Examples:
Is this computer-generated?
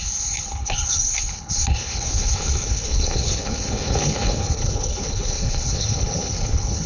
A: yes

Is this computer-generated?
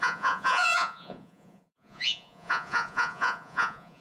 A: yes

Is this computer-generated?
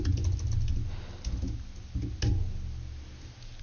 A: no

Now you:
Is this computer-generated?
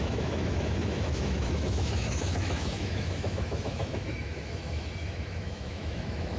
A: yes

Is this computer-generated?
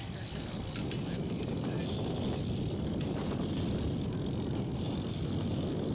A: no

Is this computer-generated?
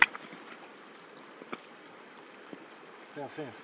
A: yes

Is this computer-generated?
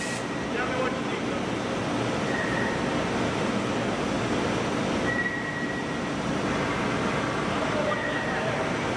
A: no